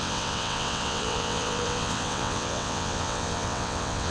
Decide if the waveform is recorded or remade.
remade